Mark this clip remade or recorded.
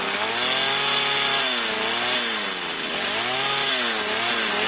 recorded